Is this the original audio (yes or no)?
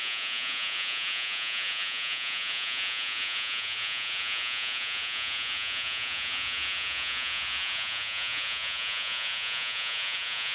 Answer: no